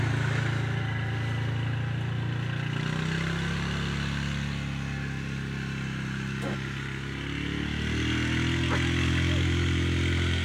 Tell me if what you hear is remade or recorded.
recorded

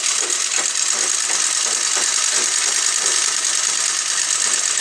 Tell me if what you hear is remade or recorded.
recorded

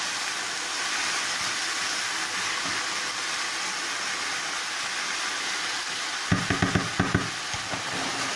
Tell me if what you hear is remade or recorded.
recorded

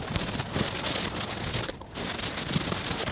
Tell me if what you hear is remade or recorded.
recorded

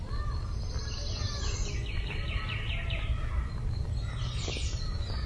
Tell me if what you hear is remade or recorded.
recorded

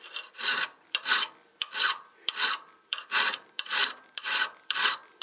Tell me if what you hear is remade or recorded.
remade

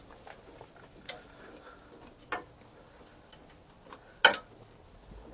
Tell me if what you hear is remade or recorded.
recorded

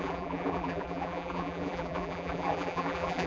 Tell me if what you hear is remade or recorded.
remade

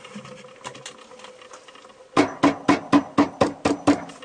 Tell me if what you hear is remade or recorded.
recorded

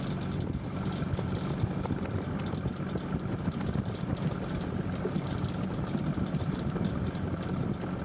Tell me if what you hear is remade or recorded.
recorded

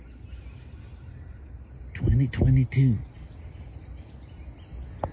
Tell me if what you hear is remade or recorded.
recorded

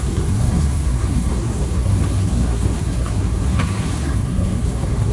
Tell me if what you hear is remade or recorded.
remade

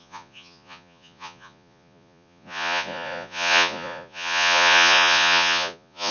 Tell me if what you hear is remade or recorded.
remade